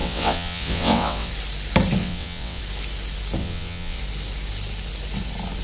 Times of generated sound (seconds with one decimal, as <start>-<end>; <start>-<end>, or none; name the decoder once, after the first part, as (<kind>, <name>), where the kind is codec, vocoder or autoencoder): 0.0-1.3 (vocoder, WaveNeXt); 2.0-2.6; 3.4-4.0